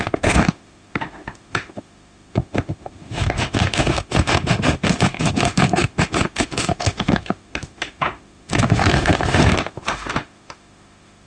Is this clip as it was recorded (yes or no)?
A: no